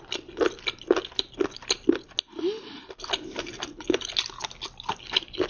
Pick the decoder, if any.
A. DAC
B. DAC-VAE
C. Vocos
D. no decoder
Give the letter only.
D